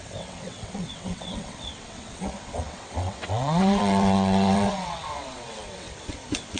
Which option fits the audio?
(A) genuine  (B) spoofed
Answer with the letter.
B